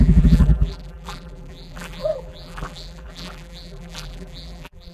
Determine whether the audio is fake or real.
fake